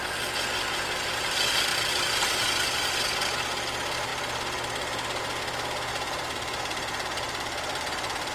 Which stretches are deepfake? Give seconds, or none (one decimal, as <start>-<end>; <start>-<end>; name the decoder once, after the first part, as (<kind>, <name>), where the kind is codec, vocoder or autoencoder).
1.7-2.9 (vocoder, BigVGAN v2); 5.9-8.3